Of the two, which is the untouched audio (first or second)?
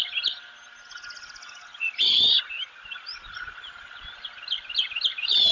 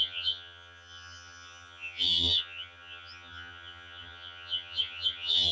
first